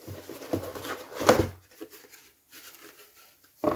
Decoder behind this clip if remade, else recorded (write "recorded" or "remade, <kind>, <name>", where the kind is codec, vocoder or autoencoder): recorded